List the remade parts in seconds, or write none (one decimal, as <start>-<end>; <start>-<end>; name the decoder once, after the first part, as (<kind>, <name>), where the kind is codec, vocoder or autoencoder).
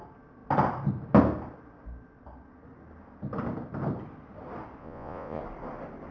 4.8-5.4 (vocoder, Vocos)